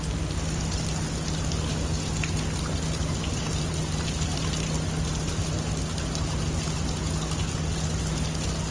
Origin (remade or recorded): recorded